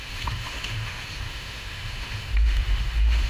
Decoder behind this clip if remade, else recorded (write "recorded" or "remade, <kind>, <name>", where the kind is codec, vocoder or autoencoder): remade, autoencoder, DAC-VAE